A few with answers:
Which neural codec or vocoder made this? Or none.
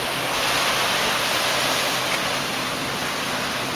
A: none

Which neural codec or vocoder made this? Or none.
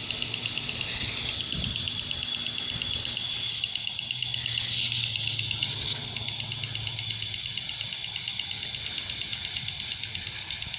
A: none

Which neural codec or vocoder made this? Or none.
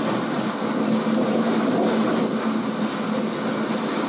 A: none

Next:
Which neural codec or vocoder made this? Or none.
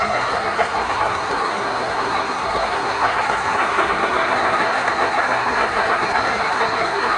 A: codec, SNAC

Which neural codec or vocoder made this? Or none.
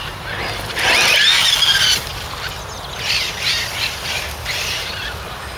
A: none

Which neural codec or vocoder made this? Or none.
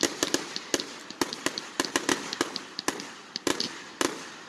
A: none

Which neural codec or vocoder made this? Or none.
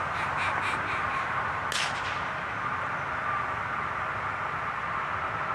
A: none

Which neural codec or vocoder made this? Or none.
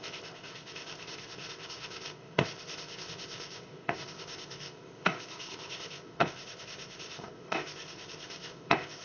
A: codec, ZipCodec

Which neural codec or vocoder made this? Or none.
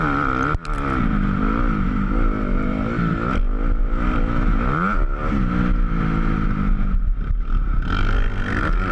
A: none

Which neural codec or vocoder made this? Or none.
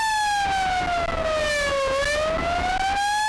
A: none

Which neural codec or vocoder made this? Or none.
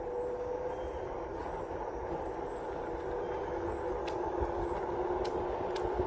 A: none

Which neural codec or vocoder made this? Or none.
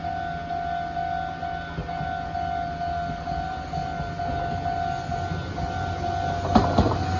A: none